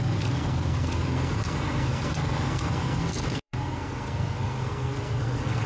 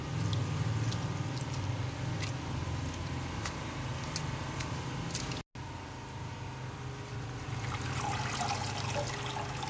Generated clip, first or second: first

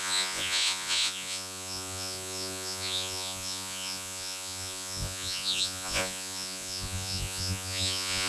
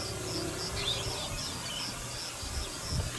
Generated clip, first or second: first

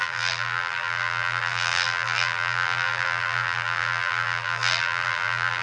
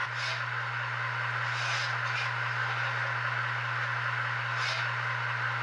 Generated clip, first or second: first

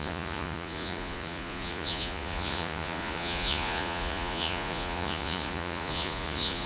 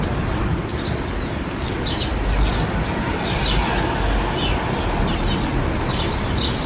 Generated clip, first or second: first